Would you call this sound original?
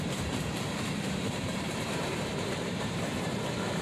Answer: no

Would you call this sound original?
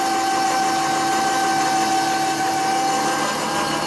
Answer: yes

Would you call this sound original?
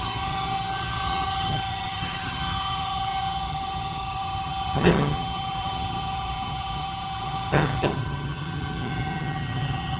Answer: no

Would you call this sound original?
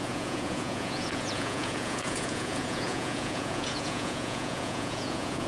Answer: no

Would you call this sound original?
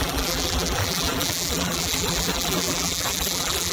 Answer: no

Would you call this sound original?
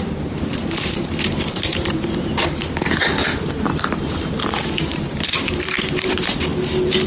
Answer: no